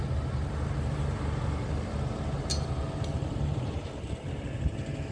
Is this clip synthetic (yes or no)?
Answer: no